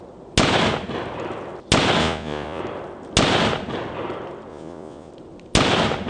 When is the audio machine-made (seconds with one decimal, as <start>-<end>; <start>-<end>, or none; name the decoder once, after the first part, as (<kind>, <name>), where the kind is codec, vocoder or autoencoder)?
2.0-2.6 (vocoder, Vocos); 4.5-5.1